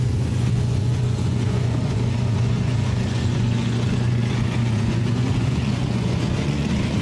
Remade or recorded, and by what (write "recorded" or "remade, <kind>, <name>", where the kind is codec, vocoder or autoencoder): remade, vocoder, Vocos